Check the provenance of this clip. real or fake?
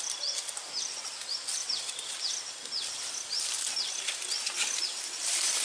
real